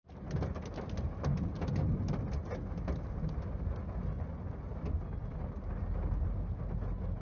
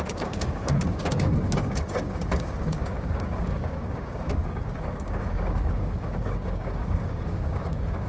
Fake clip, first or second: second